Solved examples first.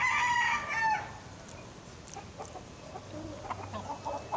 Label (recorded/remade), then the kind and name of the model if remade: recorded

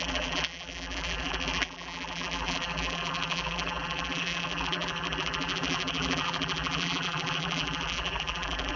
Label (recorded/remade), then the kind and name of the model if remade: remade, vocoder, BigVGAN v2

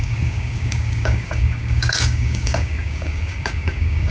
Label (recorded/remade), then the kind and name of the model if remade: remade, codec, DAC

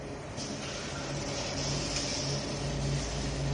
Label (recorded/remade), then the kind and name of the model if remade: recorded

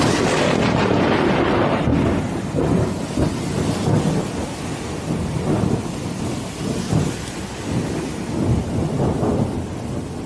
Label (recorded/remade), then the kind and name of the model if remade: recorded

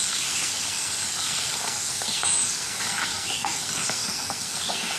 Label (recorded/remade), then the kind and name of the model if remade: remade, codec, SNAC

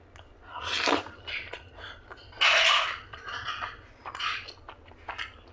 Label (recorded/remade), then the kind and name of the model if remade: recorded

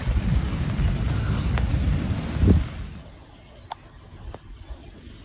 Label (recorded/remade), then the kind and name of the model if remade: recorded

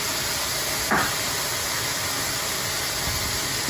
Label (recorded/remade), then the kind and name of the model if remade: recorded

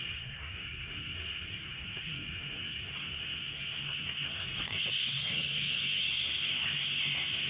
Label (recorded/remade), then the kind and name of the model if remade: remade, codec, SNAC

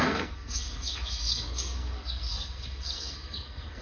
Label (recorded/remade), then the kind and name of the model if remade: remade, codec, SNAC